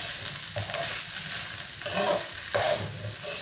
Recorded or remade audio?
recorded